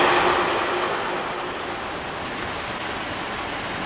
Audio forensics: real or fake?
real